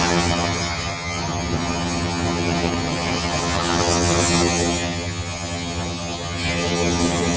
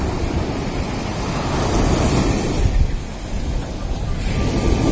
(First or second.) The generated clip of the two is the first